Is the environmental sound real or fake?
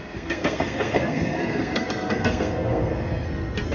fake